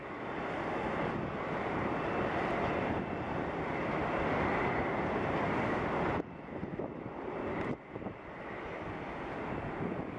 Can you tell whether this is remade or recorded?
remade